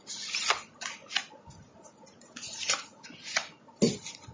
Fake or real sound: real